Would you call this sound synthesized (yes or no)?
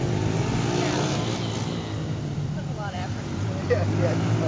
no